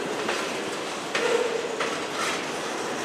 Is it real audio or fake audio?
real